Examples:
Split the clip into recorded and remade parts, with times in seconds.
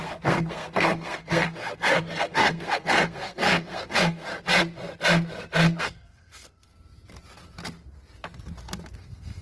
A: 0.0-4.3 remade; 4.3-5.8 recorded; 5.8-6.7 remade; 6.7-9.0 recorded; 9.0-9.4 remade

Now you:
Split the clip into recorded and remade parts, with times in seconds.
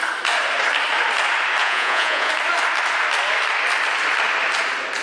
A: 0.0-1.6 recorded; 1.6-2.3 remade; 2.3-5.0 recorded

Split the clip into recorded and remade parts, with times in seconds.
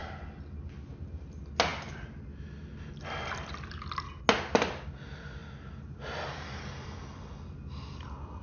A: 0.0-8.4 recorded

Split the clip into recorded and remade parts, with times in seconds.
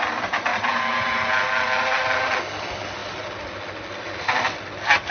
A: 0.0-5.1 recorded